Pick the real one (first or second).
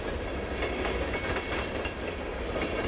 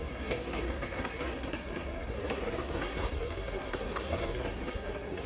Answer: first